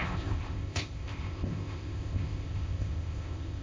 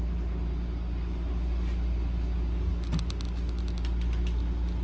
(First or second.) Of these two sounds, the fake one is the first